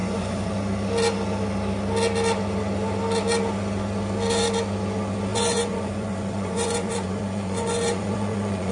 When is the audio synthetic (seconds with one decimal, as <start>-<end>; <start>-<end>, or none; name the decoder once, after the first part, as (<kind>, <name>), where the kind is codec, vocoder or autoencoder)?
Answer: 0.0-0.5 (vocoder, Vocos); 5.3-8.7